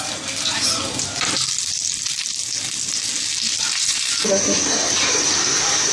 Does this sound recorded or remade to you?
recorded